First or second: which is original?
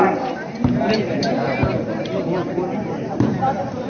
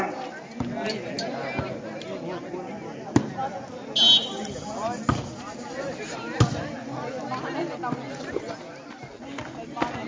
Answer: second